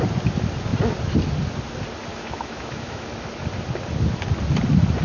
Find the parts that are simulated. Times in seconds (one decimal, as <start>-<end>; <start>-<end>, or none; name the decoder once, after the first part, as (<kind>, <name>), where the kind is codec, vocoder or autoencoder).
2.1-3.1 (autoencoder, DAC-VAE)